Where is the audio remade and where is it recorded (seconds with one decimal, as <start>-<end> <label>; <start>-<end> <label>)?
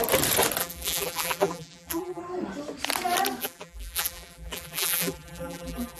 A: 0.0-0.6 recorded; 0.6-2.2 remade; 2.2-3.4 recorded; 3.4-6.0 remade